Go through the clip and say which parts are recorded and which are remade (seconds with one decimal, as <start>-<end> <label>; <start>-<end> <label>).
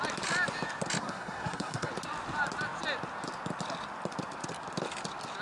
0.0-1.0 recorded; 1.0-1.9 remade; 1.9-5.4 recorded